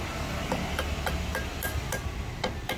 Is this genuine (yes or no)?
yes